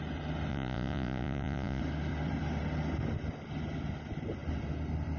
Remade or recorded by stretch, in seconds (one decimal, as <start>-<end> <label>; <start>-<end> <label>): 0.0-0.5 recorded; 0.5-1.8 remade; 1.8-5.2 recorded